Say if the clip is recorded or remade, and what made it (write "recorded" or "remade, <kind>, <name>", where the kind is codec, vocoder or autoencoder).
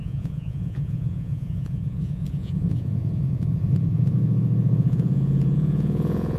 remade, vocoder, Vocos